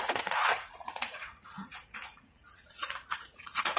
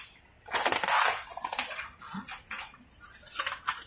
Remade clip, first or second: first